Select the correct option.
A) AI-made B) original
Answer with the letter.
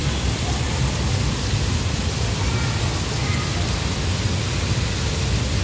B